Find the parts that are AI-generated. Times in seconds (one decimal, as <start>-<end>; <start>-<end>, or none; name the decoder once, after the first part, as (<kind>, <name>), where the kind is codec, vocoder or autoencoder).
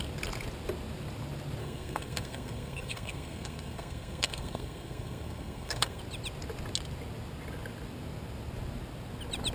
1.6-6.0 (codec, SNAC)